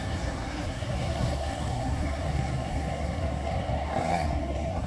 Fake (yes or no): yes